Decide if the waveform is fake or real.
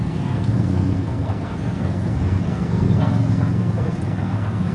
fake